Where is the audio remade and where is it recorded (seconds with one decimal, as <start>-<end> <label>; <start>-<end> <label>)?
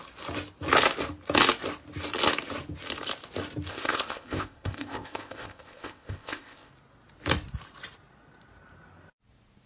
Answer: 0.0-3.7 recorded; 3.7-6.7 remade; 6.7-9.7 recorded